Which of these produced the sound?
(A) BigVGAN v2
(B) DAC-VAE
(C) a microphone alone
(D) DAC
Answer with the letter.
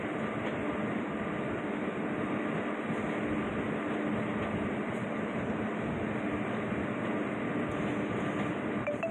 C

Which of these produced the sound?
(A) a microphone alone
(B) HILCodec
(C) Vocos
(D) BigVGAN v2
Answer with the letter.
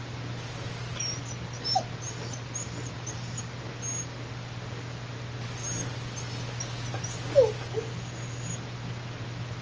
A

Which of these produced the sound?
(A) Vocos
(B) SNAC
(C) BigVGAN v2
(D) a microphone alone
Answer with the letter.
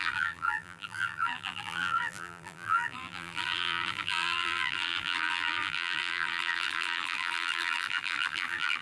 C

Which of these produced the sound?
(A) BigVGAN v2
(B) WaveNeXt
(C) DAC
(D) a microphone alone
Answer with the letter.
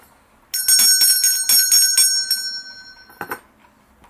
D